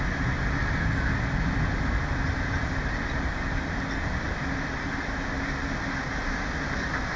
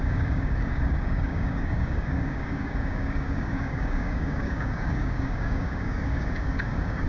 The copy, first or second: second